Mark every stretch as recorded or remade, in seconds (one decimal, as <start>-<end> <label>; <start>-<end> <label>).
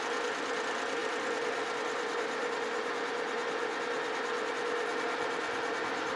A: 0.0-6.2 recorded